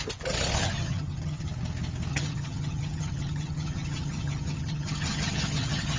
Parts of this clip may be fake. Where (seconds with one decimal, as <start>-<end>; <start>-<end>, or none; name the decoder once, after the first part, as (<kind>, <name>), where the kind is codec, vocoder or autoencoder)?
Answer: 0.6-1.5 (vocoder, HiFi-GAN); 2.1-6.0